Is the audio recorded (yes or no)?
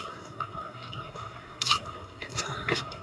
no